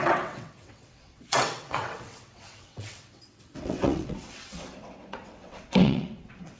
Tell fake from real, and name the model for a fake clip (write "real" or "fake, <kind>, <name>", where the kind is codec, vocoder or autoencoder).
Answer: fake, vocoder, WaveNeXt